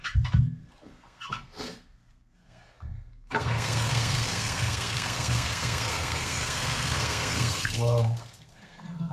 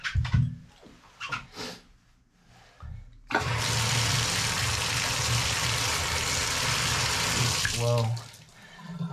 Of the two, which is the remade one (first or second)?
first